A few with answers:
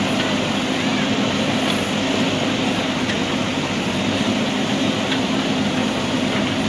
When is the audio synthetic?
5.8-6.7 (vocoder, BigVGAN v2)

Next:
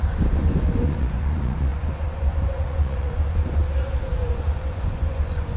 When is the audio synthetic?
0.0-3.6 (vocoder, Vocos); 4.1-5.6

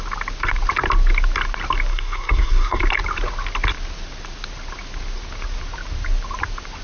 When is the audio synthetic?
1.9-2.8 (codec, SNAC)

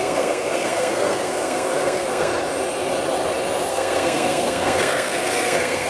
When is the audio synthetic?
0.0-2.3 (codec, SNAC); 3.7-5.9

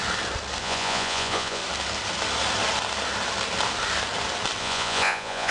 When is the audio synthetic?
0.6-1.6 (vocoder, Vocos); 4.6-5.5

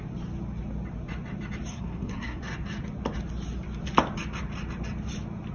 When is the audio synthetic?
1.7-2.4 (codec, SNAC)

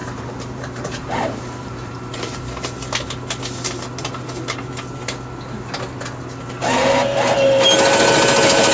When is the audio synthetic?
0.0-2.4 (vocoder, BigVGAN v2)

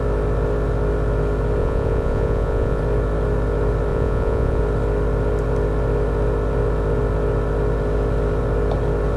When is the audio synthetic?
1.6-2.8 (vocoder, Vocos); 3.9-4.6